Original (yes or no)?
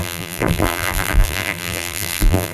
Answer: no